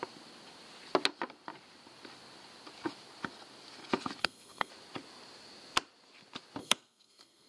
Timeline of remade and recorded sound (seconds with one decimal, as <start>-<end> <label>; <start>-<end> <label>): 0.0-4.2 recorded; 4.2-4.7 remade; 4.7-6.6 recorded; 6.6-7.5 remade